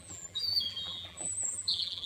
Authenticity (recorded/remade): remade